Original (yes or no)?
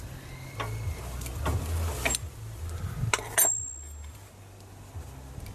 yes